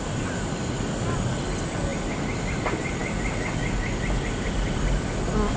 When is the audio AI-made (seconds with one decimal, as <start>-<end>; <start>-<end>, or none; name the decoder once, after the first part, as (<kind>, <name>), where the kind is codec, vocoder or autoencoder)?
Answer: none